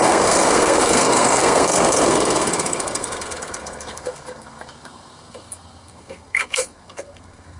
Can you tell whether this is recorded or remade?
remade